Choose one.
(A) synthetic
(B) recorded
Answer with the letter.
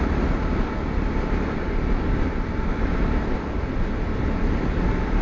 B